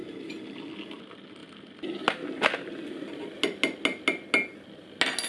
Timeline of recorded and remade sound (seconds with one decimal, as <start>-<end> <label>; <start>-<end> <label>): 0.0-5.3 recorded